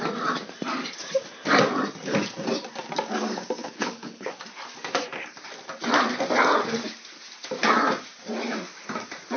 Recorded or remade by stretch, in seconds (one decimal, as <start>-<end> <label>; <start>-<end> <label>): 0.0-3.6 recorded; 3.6-4.3 remade; 4.3-9.4 recorded